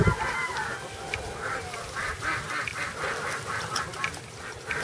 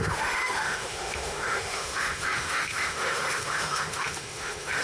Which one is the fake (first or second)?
second